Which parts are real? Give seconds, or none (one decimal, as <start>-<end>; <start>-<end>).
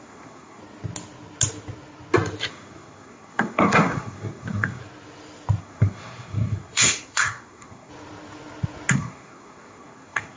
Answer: 0.6-2.5; 4.8-5.6; 7.9-8.9